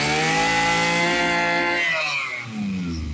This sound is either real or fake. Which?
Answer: real